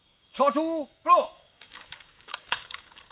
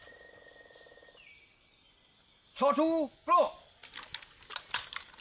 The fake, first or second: first